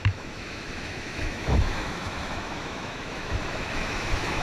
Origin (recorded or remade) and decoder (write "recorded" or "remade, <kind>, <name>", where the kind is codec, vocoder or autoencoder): remade, autoencoder, DAC-VAE